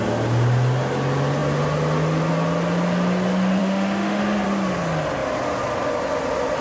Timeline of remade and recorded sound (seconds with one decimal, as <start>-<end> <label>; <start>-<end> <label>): 0.0-3.6 recorded; 3.6-4.2 remade; 4.2-6.6 recorded